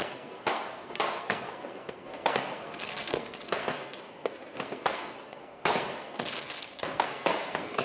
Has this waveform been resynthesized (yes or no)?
yes